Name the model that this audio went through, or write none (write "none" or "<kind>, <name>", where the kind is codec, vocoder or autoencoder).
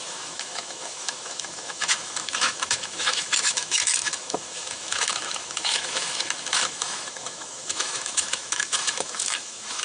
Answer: autoencoder, DAC-VAE